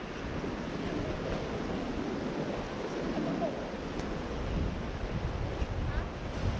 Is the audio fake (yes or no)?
no